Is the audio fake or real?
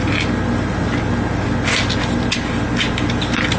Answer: fake